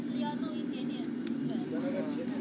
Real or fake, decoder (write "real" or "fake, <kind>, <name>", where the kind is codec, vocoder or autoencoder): real